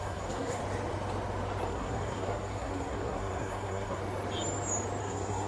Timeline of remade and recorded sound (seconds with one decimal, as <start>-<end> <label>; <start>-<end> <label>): 0.0-0.6 remade; 0.6-1.7 recorded; 1.7-4.0 remade; 4.0-5.0 recorded; 5.0-5.5 remade